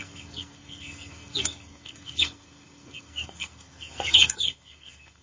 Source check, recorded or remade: remade